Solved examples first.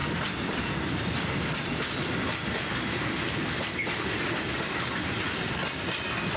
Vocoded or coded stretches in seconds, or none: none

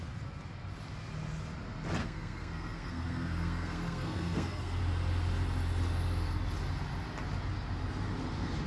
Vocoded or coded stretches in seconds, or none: 2.0-4.8 (codec, SNAC)

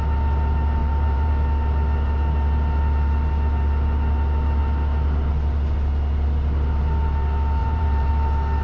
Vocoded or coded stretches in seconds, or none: 0.8-1.3 (vocoder, BigVGAN v2); 7.6-8.1